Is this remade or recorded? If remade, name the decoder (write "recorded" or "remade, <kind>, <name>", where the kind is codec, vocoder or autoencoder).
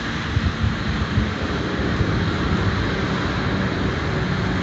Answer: recorded